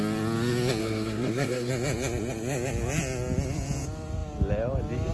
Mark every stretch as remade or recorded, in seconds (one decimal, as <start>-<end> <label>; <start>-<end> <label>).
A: 0.0-0.8 recorded; 0.8-1.7 remade; 1.7-5.1 recorded